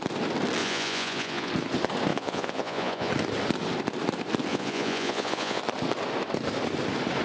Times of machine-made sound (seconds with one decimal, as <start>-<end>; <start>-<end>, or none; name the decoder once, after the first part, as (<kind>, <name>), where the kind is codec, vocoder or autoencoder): 0.6-1.5 (vocoder, Vocos); 2.1-3.1; 4.5-5.6